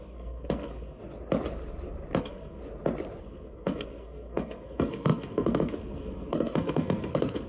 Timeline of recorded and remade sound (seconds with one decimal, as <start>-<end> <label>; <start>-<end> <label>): 0.0-1.0 remade; 1.0-2.2 recorded; 2.2-2.6 remade; 2.6-3.2 recorded; 3.2-7.5 remade